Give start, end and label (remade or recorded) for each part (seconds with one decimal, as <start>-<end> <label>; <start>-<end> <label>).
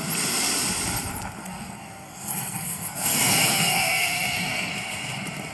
0.0-1.4 recorded; 1.4-4.7 remade; 4.7-5.5 recorded